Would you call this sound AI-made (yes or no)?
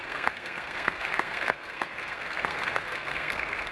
yes